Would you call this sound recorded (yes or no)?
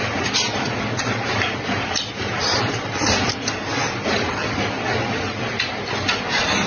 no